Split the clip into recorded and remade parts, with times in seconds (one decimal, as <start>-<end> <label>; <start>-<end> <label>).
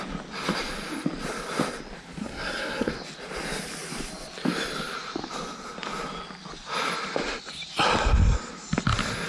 0.0-2.2 recorded; 2.2-2.9 remade; 2.9-9.3 recorded